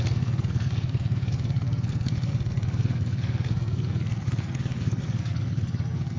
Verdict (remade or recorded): remade